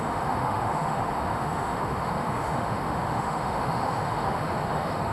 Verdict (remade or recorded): remade